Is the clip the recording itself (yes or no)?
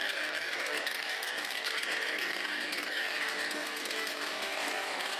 no